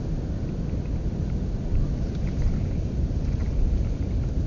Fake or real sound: real